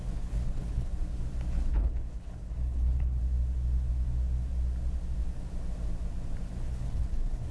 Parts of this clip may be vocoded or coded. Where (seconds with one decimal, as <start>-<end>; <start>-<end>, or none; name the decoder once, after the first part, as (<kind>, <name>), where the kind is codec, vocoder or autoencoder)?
0.0-0.9 (codec, HILCodec); 1.5-3.2; 6.7-7.5